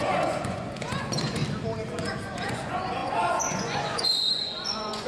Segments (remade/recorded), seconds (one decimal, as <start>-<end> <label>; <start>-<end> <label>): 0.0-1.4 remade; 1.4-2.0 recorded; 2.0-5.1 remade